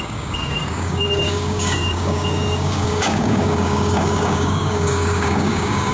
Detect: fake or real fake